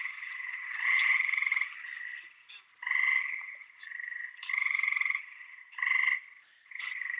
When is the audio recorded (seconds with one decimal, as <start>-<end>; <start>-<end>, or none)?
1.5-3.4; 5.6-6.4